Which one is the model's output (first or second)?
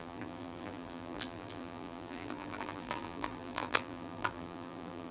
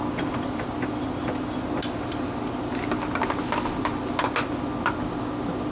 first